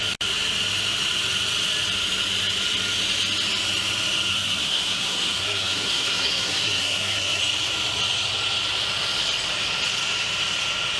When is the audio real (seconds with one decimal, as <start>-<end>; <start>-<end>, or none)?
0.0-4.3; 7.4-11.0